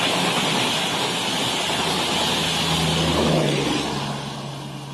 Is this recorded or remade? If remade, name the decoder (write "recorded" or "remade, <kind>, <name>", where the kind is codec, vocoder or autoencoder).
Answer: recorded